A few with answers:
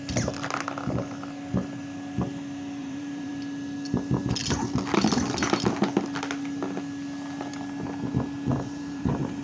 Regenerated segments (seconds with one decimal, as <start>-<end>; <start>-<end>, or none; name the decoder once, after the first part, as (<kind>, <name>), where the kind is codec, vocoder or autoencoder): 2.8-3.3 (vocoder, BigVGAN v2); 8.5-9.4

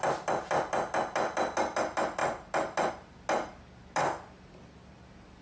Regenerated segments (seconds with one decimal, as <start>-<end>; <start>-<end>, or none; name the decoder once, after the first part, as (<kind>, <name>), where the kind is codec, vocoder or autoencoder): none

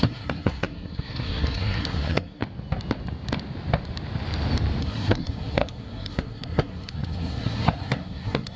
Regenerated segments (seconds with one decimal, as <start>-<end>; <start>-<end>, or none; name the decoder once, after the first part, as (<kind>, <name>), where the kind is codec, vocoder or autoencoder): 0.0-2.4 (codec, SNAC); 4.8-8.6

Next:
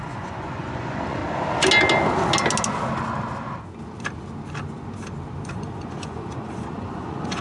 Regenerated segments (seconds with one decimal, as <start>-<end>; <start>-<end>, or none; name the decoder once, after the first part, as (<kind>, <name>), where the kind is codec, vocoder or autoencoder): 0.0-1.2 (vocoder, Vocos); 5.5-7.4

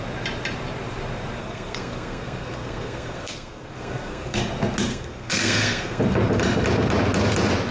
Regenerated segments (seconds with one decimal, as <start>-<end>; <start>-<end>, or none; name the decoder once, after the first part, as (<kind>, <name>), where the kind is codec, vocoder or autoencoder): 1.4-4.4 (codec, SNAC); 4.9-6.0